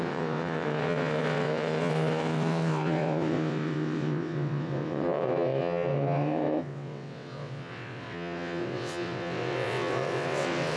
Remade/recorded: remade